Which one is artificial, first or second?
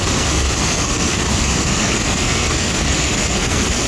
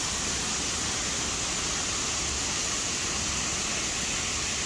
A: first